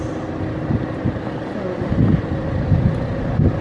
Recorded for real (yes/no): yes